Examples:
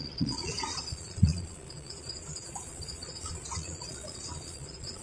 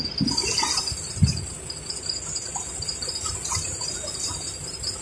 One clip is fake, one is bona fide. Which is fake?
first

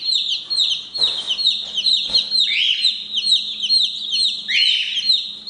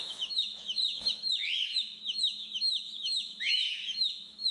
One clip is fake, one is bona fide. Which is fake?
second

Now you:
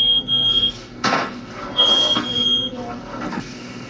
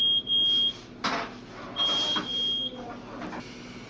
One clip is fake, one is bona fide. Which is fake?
first